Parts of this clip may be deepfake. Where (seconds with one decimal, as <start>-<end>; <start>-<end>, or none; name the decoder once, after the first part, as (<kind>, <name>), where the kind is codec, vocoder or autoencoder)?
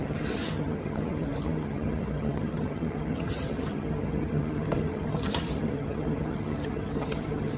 0.0-7.6 (vocoder, HiFi-GAN)